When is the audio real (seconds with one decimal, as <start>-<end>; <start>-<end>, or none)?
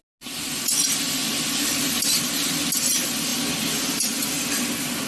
0.0-5.1